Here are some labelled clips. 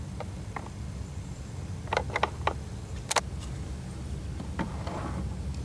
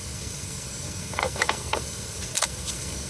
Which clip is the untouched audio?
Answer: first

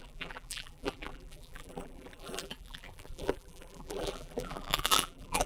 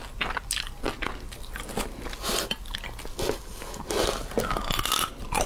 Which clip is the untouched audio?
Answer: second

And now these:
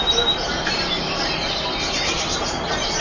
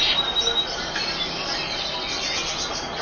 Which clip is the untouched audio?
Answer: second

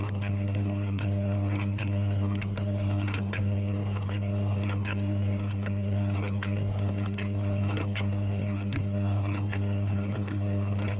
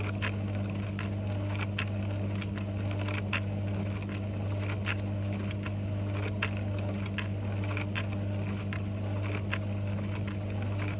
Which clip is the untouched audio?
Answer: second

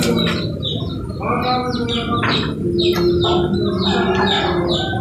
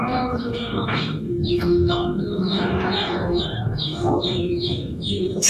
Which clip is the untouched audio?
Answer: first